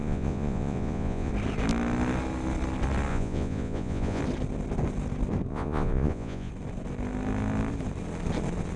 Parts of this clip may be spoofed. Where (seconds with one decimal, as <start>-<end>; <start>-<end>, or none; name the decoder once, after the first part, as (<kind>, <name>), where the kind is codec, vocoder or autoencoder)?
0.0-1.3 (vocoder, Vocos); 3.1-4.2; 5.5-6.5